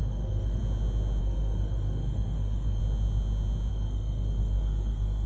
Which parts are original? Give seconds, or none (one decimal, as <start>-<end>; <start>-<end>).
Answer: 0.6-1.2; 2.8-3.7